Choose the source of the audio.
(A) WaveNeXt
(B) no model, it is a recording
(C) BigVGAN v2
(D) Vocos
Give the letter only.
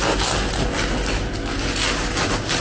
B